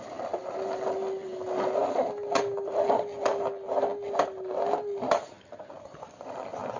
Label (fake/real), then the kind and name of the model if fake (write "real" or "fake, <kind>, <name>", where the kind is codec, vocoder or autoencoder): real